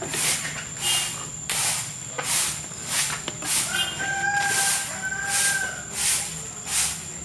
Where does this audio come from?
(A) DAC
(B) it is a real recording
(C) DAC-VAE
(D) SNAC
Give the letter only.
B